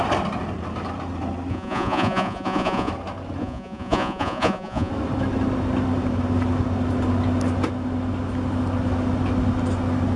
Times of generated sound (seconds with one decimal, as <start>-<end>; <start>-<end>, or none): 1.5-2.9; 3.4-4.9